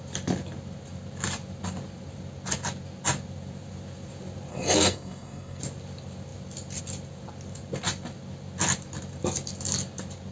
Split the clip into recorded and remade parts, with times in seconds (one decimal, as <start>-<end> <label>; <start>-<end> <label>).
0.0-4.5 recorded; 4.5-5.6 remade; 5.6-10.3 recorded